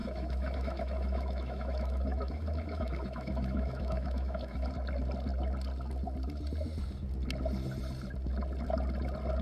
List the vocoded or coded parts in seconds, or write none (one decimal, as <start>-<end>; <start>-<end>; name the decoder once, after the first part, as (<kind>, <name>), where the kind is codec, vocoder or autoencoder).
0.0-4.7 (autoencoder, DAC-VAE)

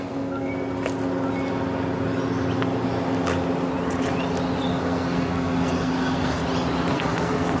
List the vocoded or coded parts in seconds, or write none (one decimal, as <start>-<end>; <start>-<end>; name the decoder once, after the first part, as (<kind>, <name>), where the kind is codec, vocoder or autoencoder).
0.0-0.5 (codec, SNAC); 4.7-6.4; 6.9-7.6

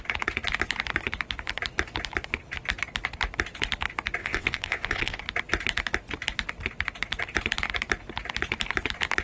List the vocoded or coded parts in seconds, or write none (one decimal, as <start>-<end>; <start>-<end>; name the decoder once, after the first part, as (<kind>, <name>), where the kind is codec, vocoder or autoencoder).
4.2-5.2 (vocoder, WaveNeXt)